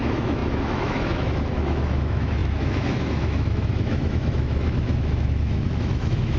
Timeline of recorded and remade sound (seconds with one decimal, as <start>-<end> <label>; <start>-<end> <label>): 0.0-6.4 remade

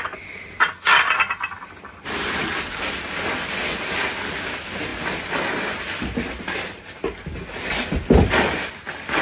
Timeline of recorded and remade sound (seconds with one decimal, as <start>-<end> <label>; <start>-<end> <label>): 0.0-9.2 recorded

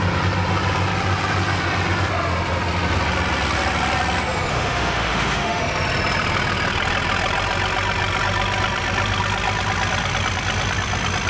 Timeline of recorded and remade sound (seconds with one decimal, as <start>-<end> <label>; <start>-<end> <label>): 0.0-4.5 recorded; 4.5-5.6 remade; 5.6-11.3 recorded

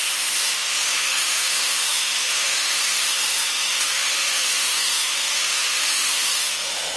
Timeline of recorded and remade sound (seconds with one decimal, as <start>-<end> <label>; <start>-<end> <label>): 0.0-7.0 remade

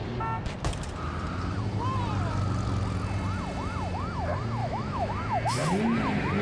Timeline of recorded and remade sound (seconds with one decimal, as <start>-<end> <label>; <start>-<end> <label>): 0.0-4.6 recorded; 4.6-5.1 remade; 5.1-6.4 recorded

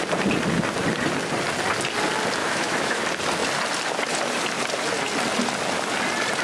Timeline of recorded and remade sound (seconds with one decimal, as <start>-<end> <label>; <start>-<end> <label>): 0.0-2.4 recorded; 2.4-3.0 remade; 3.0-6.4 recorded